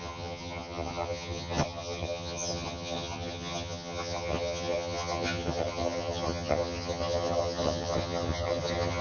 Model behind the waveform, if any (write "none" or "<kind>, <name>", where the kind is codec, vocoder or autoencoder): vocoder, HiFi-GAN